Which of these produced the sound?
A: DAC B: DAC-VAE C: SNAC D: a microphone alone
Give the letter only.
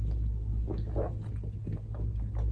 D